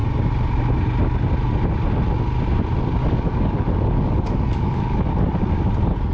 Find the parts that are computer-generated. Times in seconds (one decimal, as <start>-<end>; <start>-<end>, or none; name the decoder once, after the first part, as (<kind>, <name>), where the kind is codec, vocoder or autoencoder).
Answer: 3.0-5.4 (codec, DAC)